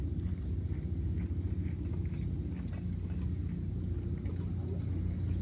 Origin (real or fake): real